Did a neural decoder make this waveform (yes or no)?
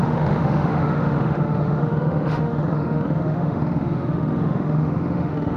yes